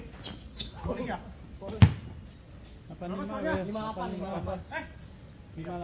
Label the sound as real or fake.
real